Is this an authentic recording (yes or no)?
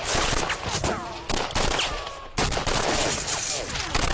yes